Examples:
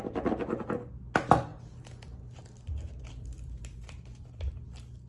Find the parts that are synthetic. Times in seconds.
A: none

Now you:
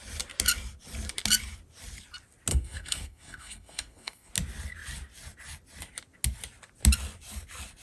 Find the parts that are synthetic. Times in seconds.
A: 2.5-4.3 (codec, SNAC)